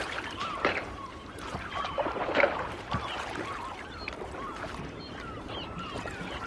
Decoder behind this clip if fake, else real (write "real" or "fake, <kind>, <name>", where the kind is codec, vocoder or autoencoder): fake, vocoder, BigVGAN v2